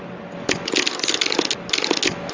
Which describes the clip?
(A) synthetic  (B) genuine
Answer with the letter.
B